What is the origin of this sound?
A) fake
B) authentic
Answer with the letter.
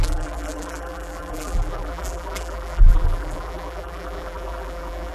A